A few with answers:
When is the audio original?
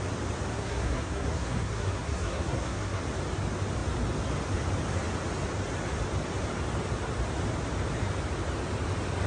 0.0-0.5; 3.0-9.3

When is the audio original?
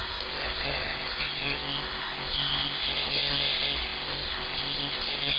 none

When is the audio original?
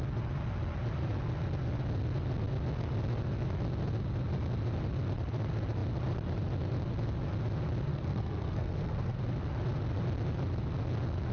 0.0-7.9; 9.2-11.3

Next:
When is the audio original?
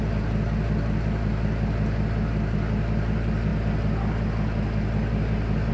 0.0-5.7